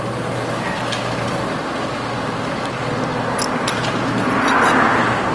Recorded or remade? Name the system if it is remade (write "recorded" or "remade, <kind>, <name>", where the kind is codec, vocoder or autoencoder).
recorded